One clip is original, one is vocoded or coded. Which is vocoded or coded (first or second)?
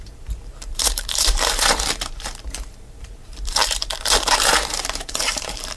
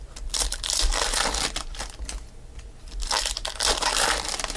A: first